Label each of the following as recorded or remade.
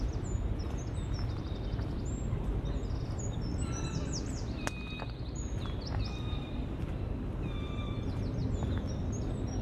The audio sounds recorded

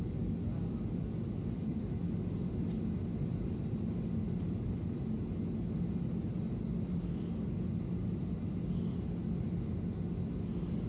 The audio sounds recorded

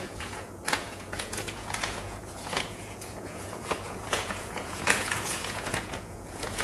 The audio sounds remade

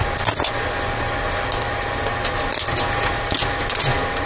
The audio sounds recorded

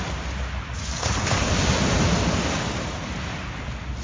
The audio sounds recorded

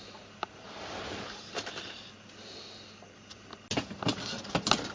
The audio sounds recorded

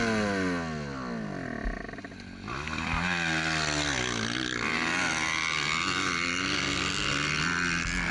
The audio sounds recorded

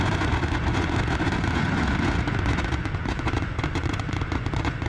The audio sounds remade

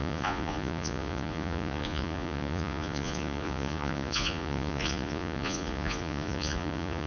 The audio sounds remade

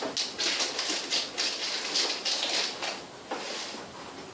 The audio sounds recorded